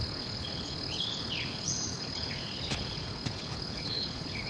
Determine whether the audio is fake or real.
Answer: fake